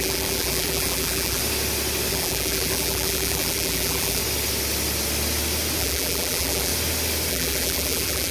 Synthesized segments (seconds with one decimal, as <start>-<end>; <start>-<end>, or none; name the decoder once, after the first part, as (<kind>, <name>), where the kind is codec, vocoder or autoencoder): 0.0-1.4 (vocoder, BigVGAN v2); 2.1-4.2; 5.8-6.7; 7.3-8.3